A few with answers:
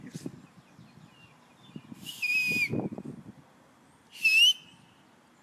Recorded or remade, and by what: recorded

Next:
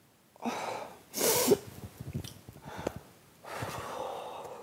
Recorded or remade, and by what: recorded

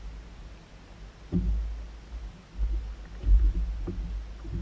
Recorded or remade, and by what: recorded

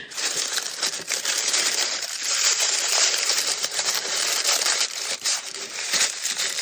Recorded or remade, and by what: remade, vocoder, BigVGAN v2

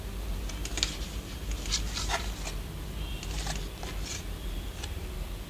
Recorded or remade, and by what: recorded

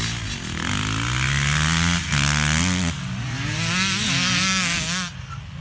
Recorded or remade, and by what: recorded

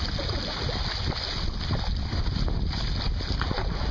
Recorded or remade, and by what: recorded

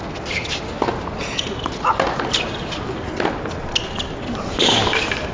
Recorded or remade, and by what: recorded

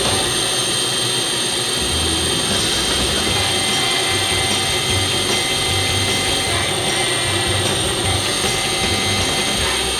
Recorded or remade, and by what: recorded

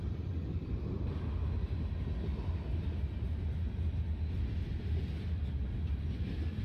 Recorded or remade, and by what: recorded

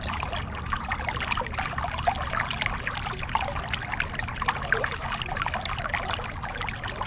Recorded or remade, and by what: recorded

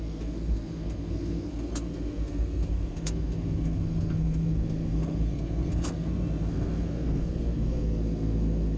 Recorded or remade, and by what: remade, codec, SNAC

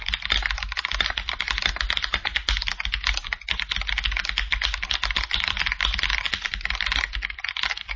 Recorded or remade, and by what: recorded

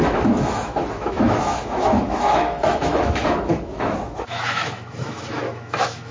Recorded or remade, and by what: remade, autoencoder, DAC-VAE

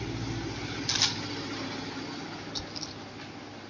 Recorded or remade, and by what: recorded